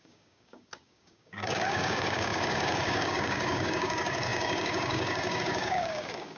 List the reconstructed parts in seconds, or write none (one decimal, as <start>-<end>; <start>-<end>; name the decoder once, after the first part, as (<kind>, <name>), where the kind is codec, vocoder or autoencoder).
0.0-6.4 (codec, DAC)